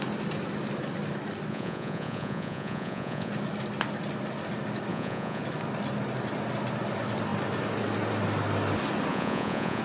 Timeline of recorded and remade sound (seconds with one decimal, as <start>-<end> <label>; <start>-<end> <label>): 0.0-1.5 recorded; 1.5-3.3 remade; 3.3-4.9 recorded; 4.9-5.4 remade; 5.4-9.1 recorded; 9.1-9.8 remade